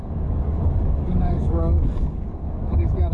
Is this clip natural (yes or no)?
no